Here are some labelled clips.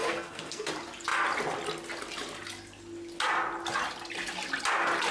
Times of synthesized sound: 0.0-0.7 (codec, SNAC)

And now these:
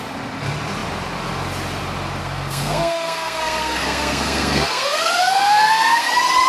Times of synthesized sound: 2.2-6.1 (codec, SNAC)

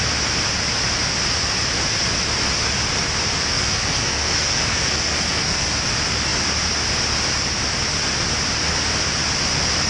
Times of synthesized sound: 3.5-5.7 (codec, SNAC)